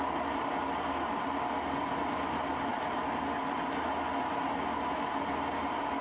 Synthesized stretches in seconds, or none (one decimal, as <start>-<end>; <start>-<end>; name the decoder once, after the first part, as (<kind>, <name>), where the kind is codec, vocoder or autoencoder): none